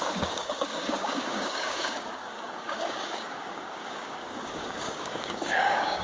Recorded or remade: remade